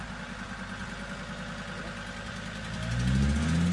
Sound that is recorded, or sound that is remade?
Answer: recorded